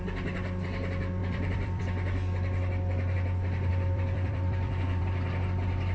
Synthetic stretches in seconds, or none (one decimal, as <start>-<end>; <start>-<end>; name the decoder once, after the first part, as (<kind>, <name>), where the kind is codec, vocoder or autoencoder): 1.2-1.8 (vocoder, BigVGAN v2); 3.7-5.0